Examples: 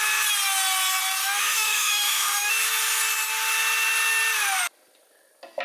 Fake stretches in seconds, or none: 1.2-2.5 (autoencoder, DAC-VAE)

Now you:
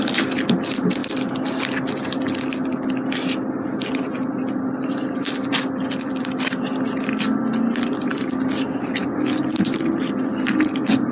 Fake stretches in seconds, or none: none

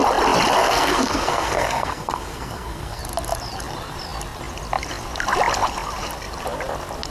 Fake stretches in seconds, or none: 0.6-3.0 (codec, SNAC)

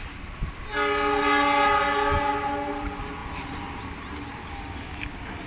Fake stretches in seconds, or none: none